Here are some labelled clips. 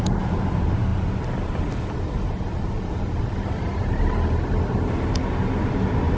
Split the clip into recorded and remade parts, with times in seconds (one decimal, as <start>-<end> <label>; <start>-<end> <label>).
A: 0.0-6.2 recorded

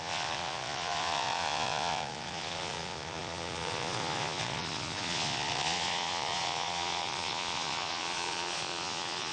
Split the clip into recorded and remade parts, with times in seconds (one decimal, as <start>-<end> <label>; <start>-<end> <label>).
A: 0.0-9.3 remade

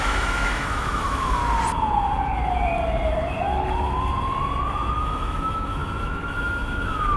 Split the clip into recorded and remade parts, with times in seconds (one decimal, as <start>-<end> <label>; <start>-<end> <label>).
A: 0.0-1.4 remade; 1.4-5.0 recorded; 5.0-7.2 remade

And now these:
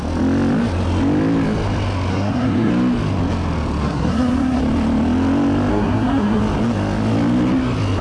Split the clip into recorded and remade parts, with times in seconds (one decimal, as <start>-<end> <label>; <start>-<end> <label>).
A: 0.0-2.1 recorded; 2.1-2.7 remade; 2.7-3.8 recorded; 3.8-4.6 remade; 4.6-5.7 recorded; 5.7-6.4 remade; 6.4-8.0 recorded

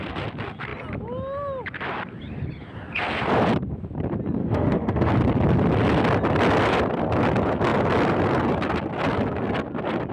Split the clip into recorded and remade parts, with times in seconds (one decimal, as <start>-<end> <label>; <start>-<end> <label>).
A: 0.0-4.4 recorded; 4.4-5.1 remade; 5.1-10.1 recorded

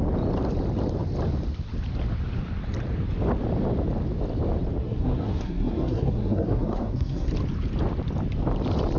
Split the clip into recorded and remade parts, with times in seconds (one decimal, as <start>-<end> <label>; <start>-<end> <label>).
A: 0.0-4.8 recorded; 4.8-7.3 remade; 7.3-9.0 recorded

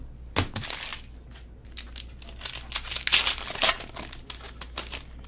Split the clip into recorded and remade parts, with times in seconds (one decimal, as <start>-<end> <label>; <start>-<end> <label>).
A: 0.0-5.3 recorded